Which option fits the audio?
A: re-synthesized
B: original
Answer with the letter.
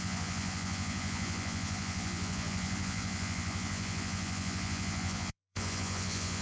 A